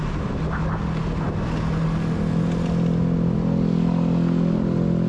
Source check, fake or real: real